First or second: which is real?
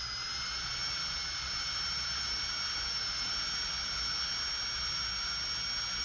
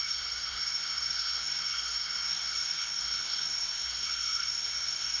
first